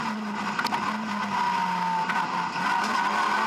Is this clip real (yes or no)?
yes